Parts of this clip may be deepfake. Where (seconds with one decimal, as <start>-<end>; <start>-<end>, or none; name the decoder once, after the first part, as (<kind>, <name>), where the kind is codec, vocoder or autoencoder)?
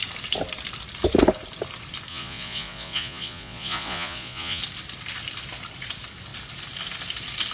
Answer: 2.1-4.6 (vocoder, Vocos)